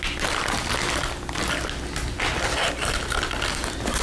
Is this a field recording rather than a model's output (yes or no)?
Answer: yes